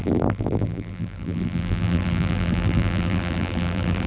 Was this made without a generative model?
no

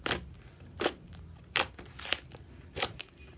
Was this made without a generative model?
yes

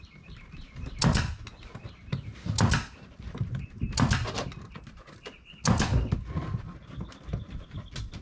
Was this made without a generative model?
yes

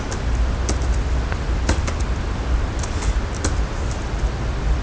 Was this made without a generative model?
yes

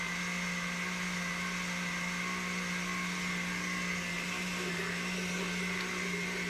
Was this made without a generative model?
yes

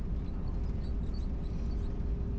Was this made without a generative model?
yes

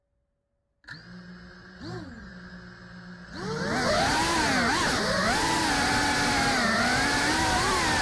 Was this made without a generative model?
yes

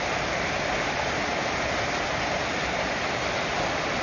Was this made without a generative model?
yes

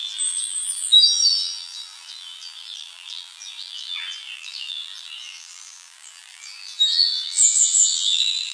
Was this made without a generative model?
no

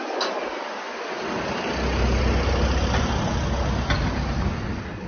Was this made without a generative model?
yes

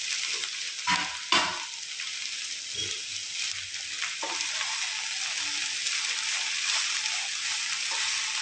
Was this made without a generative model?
yes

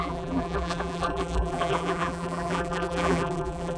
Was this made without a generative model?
no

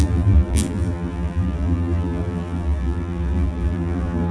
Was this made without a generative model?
no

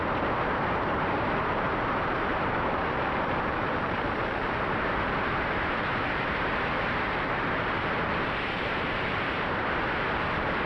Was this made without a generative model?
no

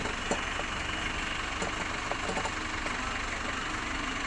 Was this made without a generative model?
yes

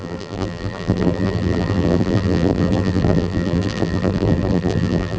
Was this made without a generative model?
no